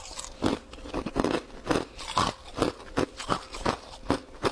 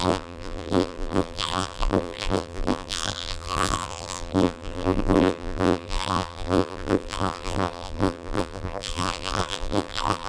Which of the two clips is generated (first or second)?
second